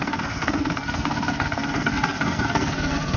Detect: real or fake fake